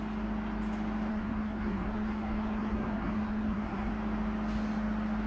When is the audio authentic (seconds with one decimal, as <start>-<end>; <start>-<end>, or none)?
0.0-1.1; 3.9-5.3